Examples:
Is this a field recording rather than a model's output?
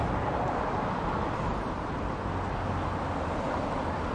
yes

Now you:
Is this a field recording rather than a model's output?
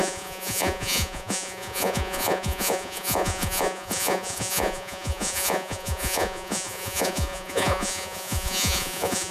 no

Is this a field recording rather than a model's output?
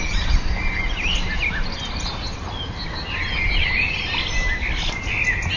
yes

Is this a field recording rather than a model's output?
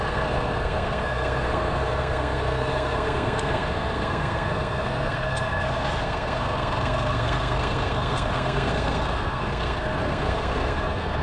no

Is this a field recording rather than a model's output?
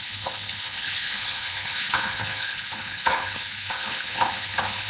no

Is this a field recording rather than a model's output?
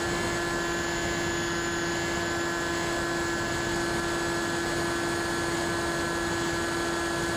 yes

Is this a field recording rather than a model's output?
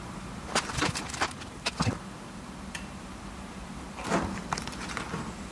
no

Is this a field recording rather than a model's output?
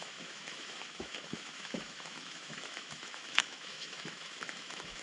no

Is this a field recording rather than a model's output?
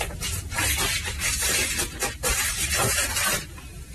no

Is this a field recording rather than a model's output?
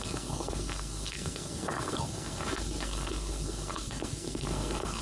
no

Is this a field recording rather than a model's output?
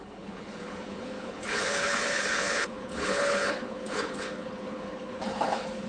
no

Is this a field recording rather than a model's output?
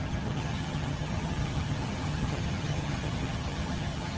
no